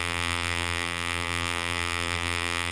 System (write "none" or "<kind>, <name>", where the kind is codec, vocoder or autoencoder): vocoder, BigVGAN v2